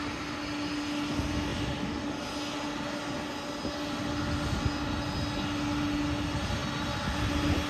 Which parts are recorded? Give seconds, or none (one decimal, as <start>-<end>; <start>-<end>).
0.0-7.7